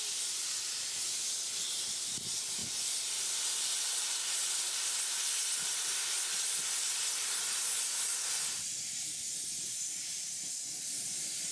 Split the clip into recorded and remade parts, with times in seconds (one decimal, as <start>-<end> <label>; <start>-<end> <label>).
0.0-11.5 recorded